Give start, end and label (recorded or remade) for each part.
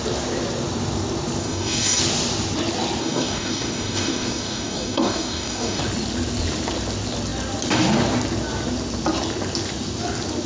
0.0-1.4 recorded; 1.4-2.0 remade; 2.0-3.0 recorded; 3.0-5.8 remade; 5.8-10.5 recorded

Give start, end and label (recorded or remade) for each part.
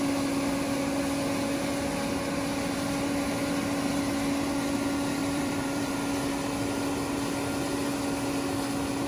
0.0-5.2 recorded; 5.2-5.9 remade; 5.9-9.1 recorded